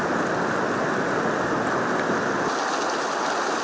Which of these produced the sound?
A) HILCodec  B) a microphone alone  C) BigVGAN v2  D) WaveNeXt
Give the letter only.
B